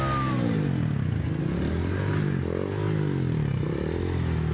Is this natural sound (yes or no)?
yes